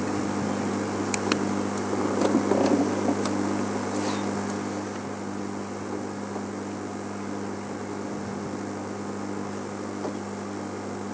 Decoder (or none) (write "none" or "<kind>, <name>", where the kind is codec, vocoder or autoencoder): none